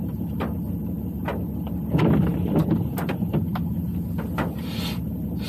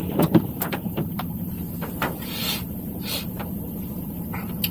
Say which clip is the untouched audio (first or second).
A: first